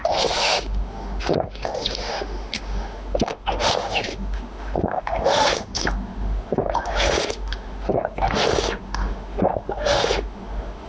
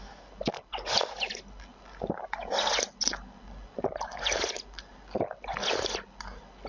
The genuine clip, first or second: second